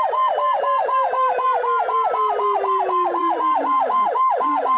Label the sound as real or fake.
real